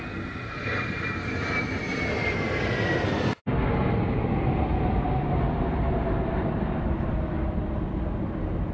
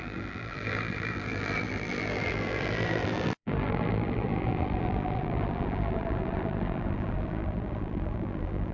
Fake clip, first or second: second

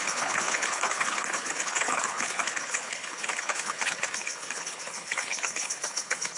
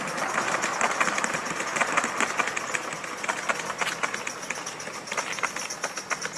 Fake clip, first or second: first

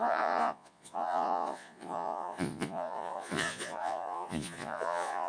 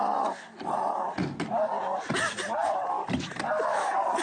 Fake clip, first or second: first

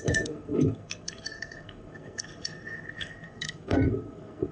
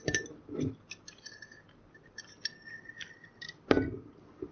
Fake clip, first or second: first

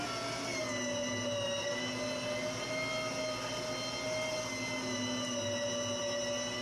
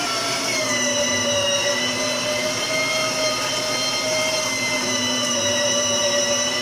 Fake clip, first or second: second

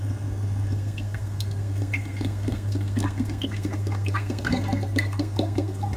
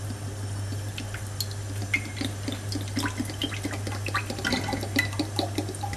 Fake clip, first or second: first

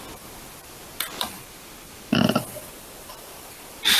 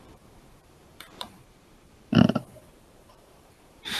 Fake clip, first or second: second